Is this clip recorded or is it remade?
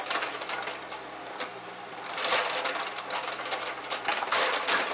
remade